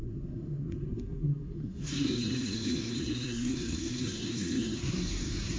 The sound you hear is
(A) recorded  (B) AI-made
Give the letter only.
B